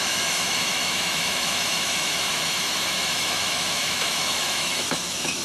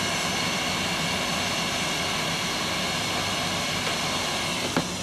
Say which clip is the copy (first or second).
first